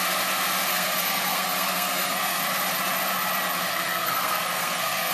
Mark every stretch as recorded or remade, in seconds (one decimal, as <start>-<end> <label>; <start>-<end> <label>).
0.0-0.7 recorded; 0.7-2.4 remade; 2.4-3.7 recorded; 3.7-5.1 remade